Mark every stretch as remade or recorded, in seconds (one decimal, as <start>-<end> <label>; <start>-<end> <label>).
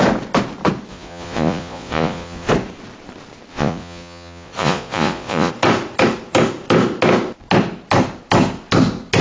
0.0-0.9 recorded; 0.9-2.5 remade; 2.5-3.5 recorded; 3.5-5.5 remade; 5.5-9.2 recorded